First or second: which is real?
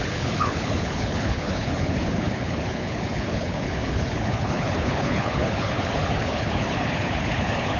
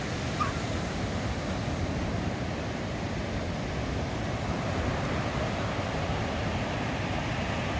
second